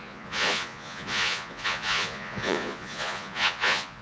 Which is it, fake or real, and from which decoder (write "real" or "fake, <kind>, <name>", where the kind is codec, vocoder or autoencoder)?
fake, vocoder, Vocos